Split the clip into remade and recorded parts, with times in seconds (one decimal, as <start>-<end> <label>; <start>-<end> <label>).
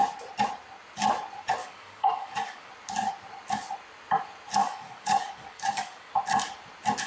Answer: 0.0-1.6 recorded; 1.6-2.7 remade; 2.7-4.6 recorded; 4.6-6.1 remade; 6.1-7.1 recorded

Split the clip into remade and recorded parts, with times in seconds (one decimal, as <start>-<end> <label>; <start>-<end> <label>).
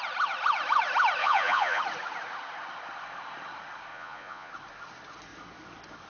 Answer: 0.0-1.2 recorded; 1.2-1.8 remade; 1.8-3.9 recorded; 3.9-4.5 remade; 4.5-6.1 recorded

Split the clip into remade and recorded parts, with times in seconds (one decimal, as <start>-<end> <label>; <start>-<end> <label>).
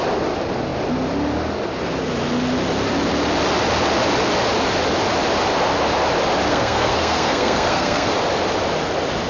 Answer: 0.0-6.5 recorded; 6.5-8.1 remade; 8.1-9.3 recorded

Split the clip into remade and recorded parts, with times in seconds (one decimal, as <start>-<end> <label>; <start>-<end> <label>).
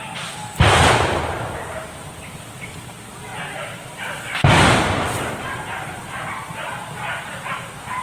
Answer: 0.0-8.0 recorded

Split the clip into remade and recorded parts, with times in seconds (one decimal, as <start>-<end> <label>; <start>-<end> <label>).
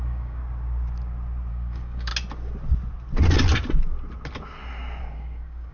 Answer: 0.0-0.4 remade; 0.4-1.5 recorded; 1.5-2.1 remade; 2.1-5.0 recorded; 5.0-5.7 remade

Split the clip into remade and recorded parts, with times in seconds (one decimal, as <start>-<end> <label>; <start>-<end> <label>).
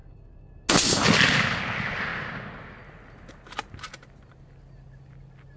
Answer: 0.0-5.6 recorded